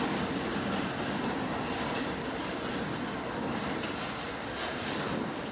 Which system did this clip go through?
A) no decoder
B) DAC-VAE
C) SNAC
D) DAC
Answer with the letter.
A